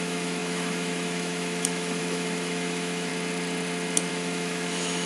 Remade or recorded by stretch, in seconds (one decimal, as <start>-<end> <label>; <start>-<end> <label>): 0.0-3.1 remade; 3.1-4.1 recorded; 4.1-5.1 remade